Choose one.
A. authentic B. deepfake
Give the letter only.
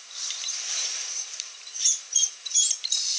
B